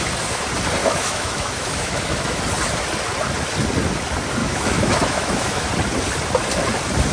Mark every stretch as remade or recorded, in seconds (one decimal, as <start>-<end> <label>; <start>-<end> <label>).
0.0-0.8 recorded; 0.8-2.4 remade; 2.4-4.4 recorded; 4.4-5.7 remade; 5.7-7.1 recorded